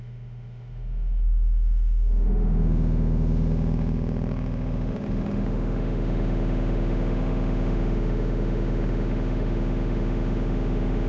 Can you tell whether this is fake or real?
fake